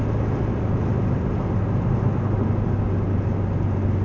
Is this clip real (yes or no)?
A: yes